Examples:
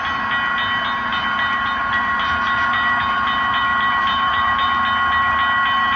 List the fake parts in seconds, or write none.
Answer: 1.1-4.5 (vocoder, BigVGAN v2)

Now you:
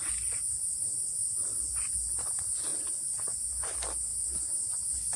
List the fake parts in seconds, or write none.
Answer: none

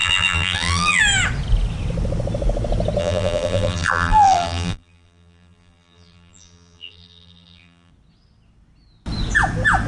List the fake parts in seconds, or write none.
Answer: 0.0-1.0 (vocoder, BigVGAN v2); 3.0-7.9

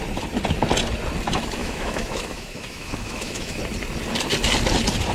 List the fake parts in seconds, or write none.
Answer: 1.6-3.6 (autoencoder, DAC-VAE)

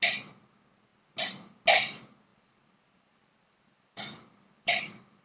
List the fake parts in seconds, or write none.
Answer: 0.9-1.6 (vocoder, BigVGAN v2); 2.3-5.2

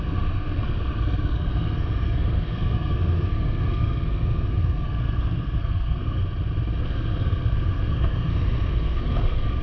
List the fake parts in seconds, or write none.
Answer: 0.0-6.2 (codec, SNAC); 6.8-9.6

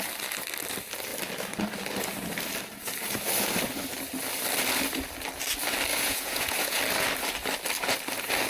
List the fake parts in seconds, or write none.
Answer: 5.9-6.8 (vocoder, Vocos)

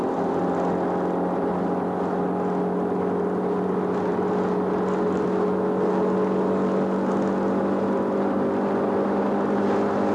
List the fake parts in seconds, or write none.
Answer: none